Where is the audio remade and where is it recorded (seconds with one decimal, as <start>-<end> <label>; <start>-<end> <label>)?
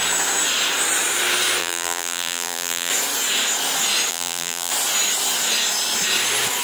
0.0-1.6 recorded; 1.6-2.9 remade; 2.9-4.1 recorded; 4.1-4.7 remade; 4.7-6.6 recorded